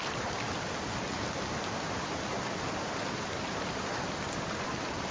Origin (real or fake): real